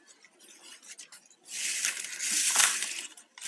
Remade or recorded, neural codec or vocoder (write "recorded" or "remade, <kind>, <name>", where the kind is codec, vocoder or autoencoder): recorded